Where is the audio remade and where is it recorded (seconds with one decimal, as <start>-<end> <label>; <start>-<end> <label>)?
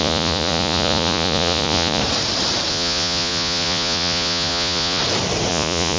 0.0-2.0 remade; 2.0-2.7 recorded; 2.7-5.0 remade; 5.0-5.5 recorded; 5.5-6.0 remade